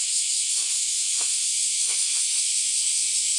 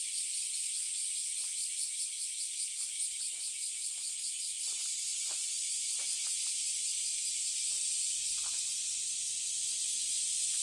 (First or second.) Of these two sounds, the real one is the second